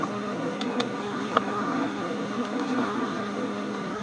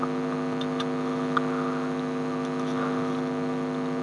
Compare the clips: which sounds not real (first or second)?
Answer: first